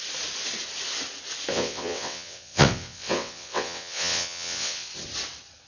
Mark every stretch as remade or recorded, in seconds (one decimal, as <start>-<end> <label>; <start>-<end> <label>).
0.0-1.5 recorded; 1.5-4.9 remade; 4.9-5.7 recorded